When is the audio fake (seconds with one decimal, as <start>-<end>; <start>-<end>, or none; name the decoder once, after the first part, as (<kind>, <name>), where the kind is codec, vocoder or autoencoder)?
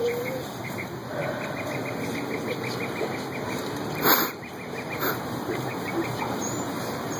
0.0-1.0 (vocoder, BigVGAN v2); 4.9-7.2